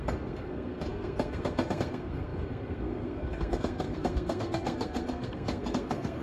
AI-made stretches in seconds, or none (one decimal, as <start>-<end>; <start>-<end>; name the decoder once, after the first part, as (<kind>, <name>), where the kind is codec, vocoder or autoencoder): 0.0-6.2 (codec, SNAC)

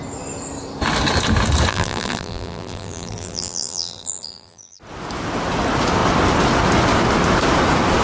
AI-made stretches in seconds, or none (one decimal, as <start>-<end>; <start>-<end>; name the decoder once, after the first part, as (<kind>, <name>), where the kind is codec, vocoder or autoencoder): 1.7-4.8 (vocoder, BigVGAN v2)

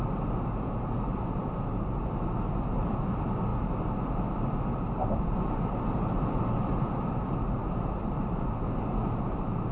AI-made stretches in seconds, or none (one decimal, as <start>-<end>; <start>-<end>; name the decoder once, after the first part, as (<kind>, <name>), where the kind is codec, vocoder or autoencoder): none